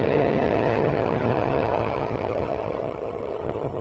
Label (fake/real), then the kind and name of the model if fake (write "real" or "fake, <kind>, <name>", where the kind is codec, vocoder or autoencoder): fake, vocoder, HiFi-GAN